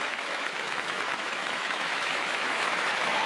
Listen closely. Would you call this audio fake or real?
fake